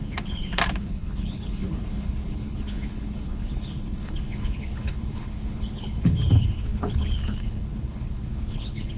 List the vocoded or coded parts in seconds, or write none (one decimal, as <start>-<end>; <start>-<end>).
0.0-9.0